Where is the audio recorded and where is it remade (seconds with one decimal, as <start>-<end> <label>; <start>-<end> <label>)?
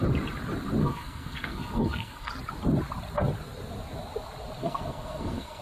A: 0.0-0.8 recorded; 0.8-2.3 remade; 2.3-4.6 recorded; 4.6-5.6 remade